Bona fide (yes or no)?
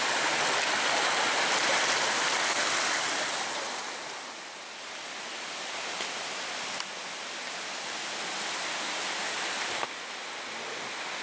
yes